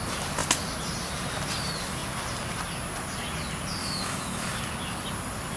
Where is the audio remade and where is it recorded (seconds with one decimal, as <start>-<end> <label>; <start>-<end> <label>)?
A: 0.0-3.8 recorded; 3.8-4.6 remade; 4.6-5.6 recorded